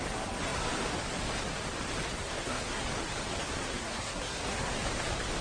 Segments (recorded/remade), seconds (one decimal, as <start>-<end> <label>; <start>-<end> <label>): 0.0-2.2 recorded; 2.2-2.8 remade; 2.8-3.6 recorded; 3.6-4.7 remade; 4.7-5.4 recorded